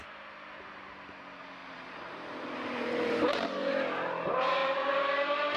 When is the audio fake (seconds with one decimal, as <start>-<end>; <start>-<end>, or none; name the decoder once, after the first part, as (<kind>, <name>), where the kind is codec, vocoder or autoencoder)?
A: 1.6-3.7 (vocoder, BigVGAN v2)